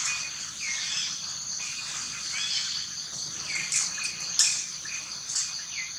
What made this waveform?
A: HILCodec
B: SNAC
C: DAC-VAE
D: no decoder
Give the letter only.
D